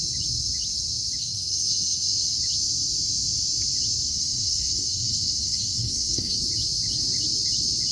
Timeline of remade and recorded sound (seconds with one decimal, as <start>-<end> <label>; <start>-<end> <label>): 0.0-1.2 recorded; 1.2-2.4 remade; 2.4-4.1 recorded; 4.1-6.4 remade; 6.4-7.9 recorded